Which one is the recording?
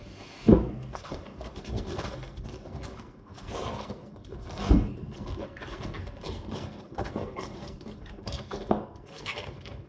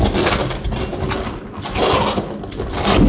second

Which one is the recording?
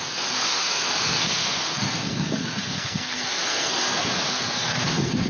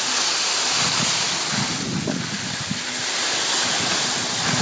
second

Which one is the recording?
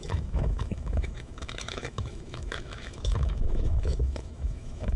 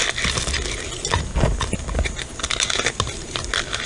second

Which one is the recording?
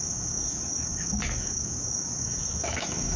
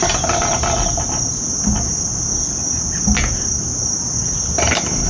second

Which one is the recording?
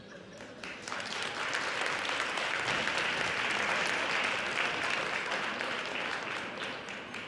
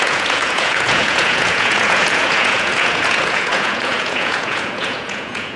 first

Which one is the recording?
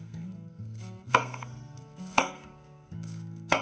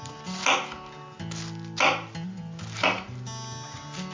second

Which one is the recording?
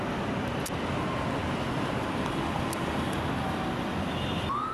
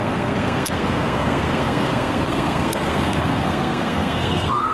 first